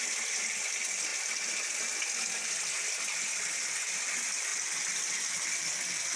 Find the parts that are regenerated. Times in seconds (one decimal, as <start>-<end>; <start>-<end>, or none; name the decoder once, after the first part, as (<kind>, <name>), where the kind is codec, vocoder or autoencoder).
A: none